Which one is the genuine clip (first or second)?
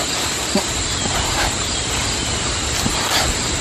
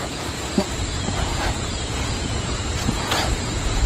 first